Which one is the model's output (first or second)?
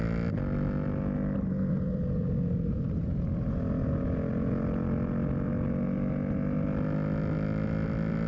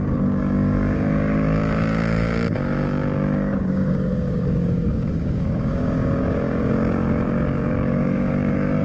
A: second